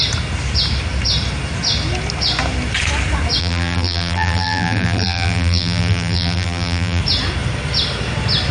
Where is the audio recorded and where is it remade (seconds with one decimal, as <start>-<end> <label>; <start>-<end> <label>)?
0.0-3.4 recorded; 3.4-7.0 remade; 7.0-8.5 recorded